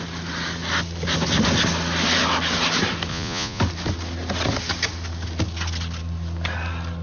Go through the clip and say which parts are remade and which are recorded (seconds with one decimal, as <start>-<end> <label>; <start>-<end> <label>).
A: 0.0-3.1 recorded; 3.1-3.6 remade; 3.6-7.0 recorded